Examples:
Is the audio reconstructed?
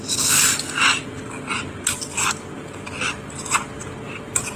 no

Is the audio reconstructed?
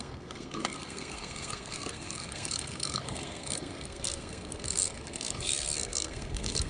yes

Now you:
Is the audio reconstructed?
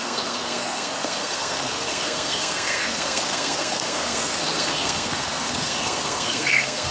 yes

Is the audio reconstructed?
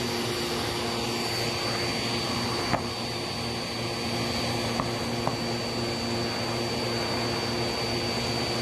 no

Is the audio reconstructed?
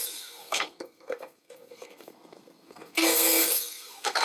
yes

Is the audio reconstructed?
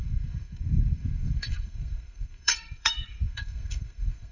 yes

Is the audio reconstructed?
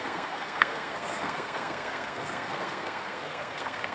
yes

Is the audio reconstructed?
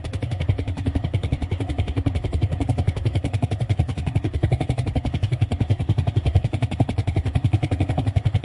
yes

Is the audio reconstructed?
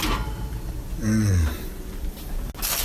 no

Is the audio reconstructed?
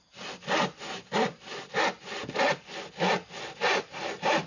no